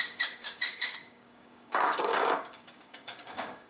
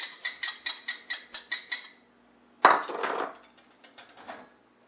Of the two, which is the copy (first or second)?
first